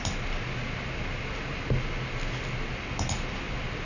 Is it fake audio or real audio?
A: real